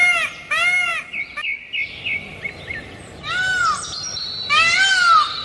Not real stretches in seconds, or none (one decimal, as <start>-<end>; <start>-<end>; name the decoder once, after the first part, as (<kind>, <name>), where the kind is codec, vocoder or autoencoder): none